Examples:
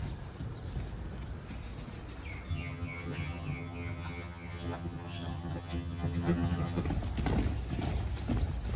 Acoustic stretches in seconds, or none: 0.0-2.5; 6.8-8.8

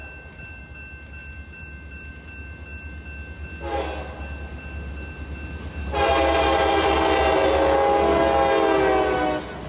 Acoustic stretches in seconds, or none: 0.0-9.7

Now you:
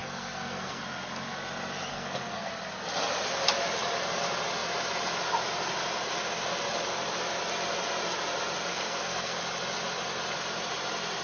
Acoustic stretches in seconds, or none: 0.8-1.9; 2.5-8.7; 9.4-11.2

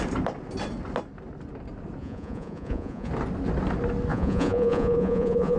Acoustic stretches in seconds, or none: 0.0-2.0; 3.1-4.1

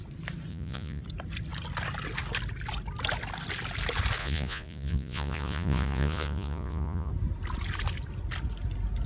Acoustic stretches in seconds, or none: 0.0-0.5; 1.0-4.2; 7.1-9.1